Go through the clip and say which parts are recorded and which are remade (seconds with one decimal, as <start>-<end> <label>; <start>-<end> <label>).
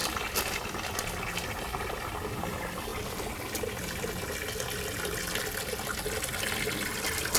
0.0-7.4 recorded